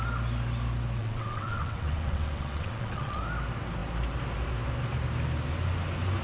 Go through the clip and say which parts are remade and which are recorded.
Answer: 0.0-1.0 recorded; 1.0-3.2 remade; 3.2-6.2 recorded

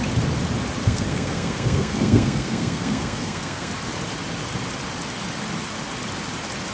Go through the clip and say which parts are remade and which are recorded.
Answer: 0.0-0.8 recorded; 0.8-3.7 remade; 3.7-6.7 recorded

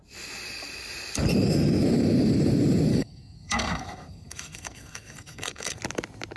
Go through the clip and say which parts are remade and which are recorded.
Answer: 0.0-2.9 recorded; 2.9-5.8 remade; 5.8-6.4 recorded

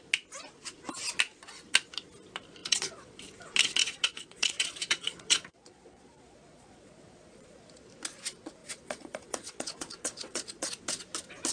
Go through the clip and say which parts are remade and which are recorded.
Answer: 0.0-2.6 recorded; 2.6-3.2 remade; 3.2-3.8 recorded; 3.8-7.9 remade; 7.9-8.6 recorded; 8.6-10.7 remade; 10.7-11.5 recorded

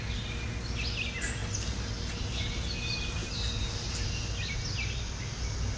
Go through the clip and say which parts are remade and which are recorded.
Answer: 0.0-5.8 recorded